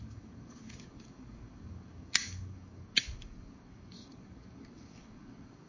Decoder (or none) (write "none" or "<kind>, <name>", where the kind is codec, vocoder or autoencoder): codec, DAC